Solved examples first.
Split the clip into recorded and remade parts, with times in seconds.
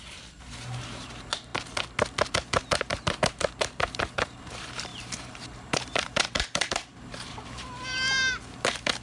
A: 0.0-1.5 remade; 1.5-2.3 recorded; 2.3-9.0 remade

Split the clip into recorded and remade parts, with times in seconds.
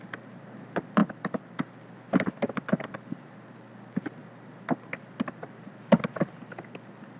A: 0.0-7.2 recorded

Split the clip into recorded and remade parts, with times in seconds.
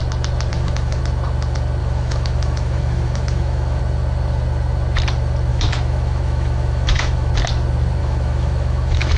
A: 0.0-0.5 recorded; 0.5-1.0 remade; 1.0-1.8 recorded; 1.8-3.8 remade; 3.8-5.5 recorded; 5.5-7.3 remade; 7.3-8.0 recorded; 8.0-9.2 remade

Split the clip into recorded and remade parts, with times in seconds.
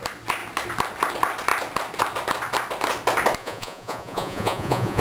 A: 0.0-3.4 recorded; 3.4-5.0 remade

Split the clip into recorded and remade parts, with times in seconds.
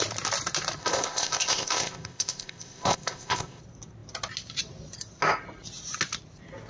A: 0.0-0.8 recorded; 0.8-3.6 remade; 3.6-6.7 recorded